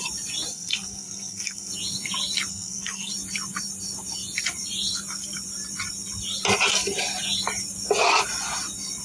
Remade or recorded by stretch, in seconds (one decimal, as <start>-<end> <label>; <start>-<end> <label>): 0.0-0.5 recorded; 0.5-1.7 remade; 1.7-2.5 recorded; 2.5-3.1 remade; 3.1-9.0 recorded